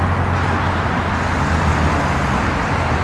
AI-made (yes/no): no